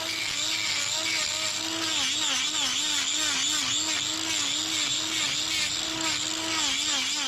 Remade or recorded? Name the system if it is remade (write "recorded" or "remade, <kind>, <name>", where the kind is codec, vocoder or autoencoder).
recorded